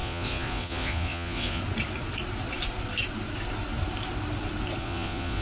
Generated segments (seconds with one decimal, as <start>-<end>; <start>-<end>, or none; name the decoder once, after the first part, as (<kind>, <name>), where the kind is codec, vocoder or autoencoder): 0.0-1.6 (vocoder, Vocos); 4.8-5.4